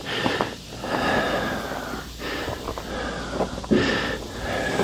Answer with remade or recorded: recorded